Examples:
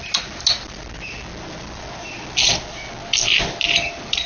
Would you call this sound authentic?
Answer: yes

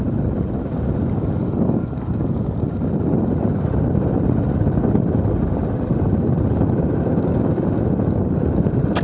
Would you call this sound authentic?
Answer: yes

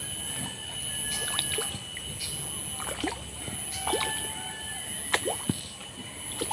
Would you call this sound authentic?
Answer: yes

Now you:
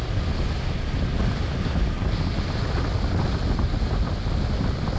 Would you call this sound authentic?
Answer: yes